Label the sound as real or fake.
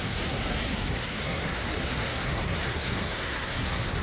fake